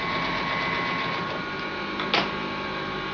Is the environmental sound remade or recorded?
recorded